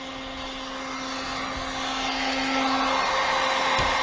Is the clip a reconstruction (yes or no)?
no